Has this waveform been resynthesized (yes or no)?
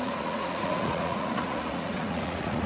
yes